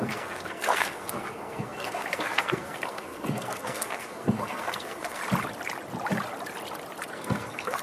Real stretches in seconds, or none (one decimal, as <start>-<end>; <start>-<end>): 5.2-7.1